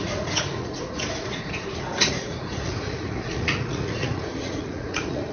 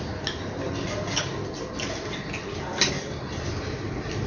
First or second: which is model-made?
first